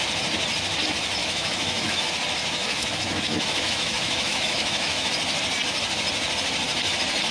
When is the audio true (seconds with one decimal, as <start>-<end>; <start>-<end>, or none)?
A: 0.0-1.2; 2.1-2.6; 5.1-7.3